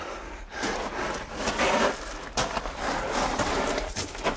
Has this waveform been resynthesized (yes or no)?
yes